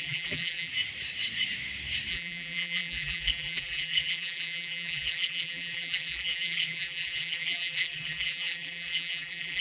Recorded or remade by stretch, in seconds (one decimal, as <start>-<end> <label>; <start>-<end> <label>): 0.0-0.7 remade; 0.7-2.1 recorded; 2.1-9.6 remade